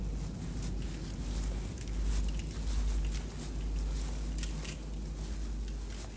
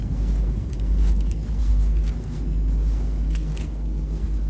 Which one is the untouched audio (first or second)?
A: first